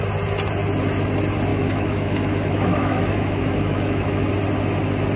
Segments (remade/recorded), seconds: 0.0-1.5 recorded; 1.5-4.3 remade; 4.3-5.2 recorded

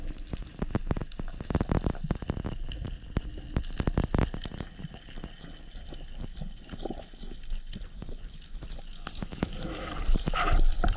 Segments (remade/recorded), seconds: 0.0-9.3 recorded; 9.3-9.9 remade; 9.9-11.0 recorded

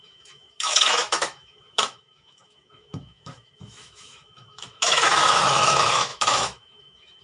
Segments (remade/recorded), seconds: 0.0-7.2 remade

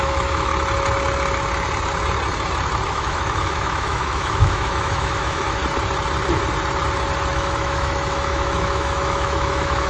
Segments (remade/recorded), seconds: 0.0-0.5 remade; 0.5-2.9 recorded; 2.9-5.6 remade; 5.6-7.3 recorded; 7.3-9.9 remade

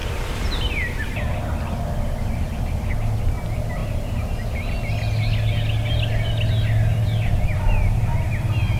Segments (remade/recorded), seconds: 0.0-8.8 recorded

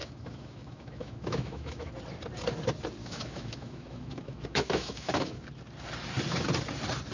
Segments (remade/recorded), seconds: 0.0-1.9 remade; 1.9-3.0 recorded; 3.0-5.4 remade; 5.4-7.1 recorded